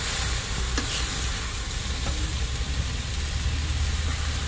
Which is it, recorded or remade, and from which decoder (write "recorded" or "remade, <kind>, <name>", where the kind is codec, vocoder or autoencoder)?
recorded